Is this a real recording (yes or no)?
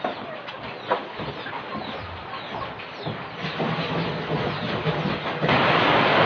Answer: yes